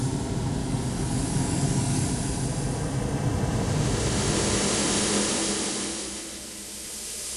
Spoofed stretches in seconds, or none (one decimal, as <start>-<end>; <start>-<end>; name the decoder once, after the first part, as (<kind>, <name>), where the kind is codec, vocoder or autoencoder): 0.6-2.1 (codec, DAC)

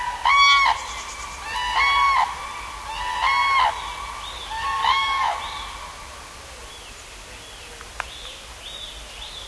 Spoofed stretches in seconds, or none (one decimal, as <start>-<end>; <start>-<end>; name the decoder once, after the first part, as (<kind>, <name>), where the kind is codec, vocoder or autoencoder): 4.8-5.4 (codec, DAC)

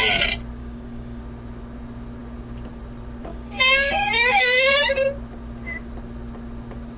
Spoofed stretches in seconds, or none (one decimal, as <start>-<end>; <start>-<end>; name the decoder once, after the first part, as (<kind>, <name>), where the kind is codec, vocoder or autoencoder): 0.6-1.2 (codec, DAC); 3.3-3.9; 4.3-4.8